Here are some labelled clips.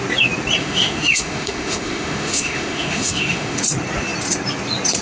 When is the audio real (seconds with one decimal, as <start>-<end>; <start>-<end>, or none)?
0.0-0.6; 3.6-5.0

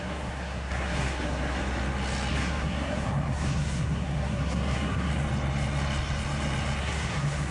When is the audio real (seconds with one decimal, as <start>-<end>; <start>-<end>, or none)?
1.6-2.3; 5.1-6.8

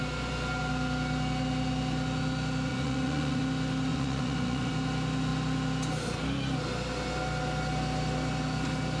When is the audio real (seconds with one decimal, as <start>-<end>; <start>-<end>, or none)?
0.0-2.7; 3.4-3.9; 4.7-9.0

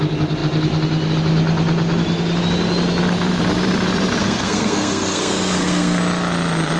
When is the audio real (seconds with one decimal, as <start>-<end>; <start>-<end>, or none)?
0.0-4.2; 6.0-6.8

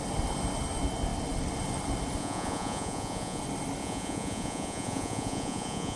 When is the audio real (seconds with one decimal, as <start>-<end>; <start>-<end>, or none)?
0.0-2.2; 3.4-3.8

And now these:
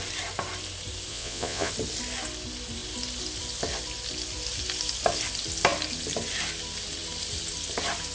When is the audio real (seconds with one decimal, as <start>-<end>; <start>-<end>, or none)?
0.0-1.1; 1.7-8.1

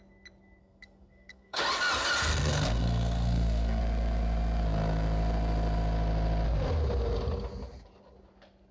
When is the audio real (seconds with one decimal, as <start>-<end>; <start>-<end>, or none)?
0.0-0.6; 1.6-2.3; 3.8-8.7